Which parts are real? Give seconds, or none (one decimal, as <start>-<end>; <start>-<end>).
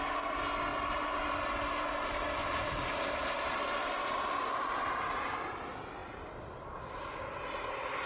0.0-0.7; 2.2-4.0; 4.9-8.1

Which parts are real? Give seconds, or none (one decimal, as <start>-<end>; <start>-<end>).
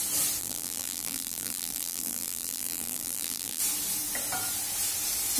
0.0-0.4; 3.6-5.4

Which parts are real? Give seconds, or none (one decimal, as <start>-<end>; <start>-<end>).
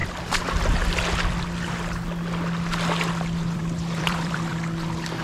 0.0-3.1; 4.5-5.2